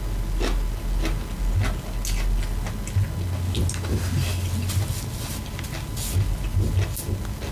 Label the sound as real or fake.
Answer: real